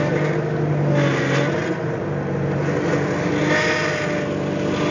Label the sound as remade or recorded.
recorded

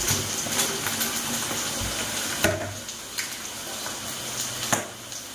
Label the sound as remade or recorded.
recorded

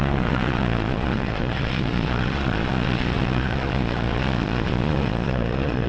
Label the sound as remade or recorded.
remade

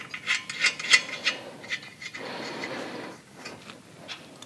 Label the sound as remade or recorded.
recorded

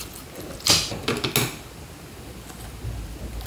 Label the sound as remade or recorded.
recorded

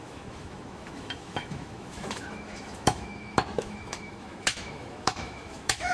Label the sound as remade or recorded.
remade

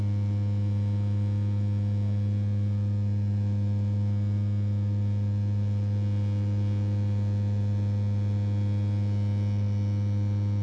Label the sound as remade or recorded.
recorded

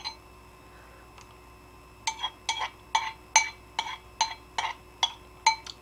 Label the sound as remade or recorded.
recorded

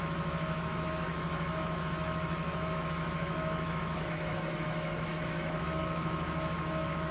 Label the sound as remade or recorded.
remade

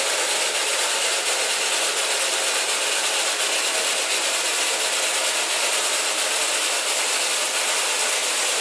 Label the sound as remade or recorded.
recorded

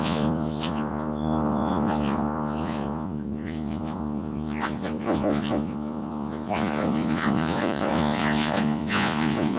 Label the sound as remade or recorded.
remade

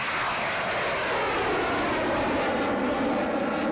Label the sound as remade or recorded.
recorded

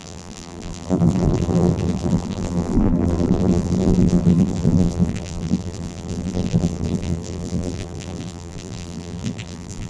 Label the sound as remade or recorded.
remade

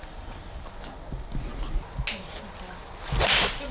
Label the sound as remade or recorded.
recorded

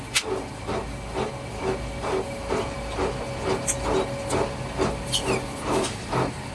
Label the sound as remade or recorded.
recorded